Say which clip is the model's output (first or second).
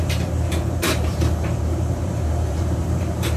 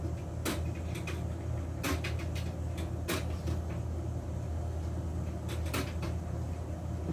first